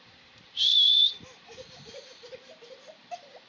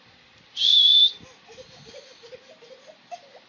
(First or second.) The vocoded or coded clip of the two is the first